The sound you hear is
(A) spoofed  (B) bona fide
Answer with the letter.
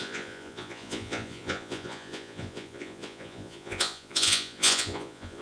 A